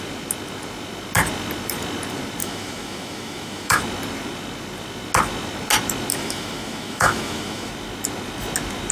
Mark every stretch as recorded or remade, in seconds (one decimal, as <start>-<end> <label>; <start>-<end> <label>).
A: 0.0-2.4 recorded; 2.4-3.8 remade; 3.8-6.1 recorded; 6.1-7.7 remade; 7.7-8.9 recorded